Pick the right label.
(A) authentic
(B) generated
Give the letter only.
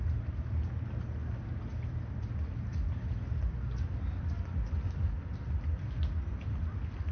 A